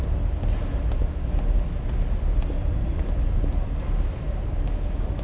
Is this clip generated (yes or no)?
no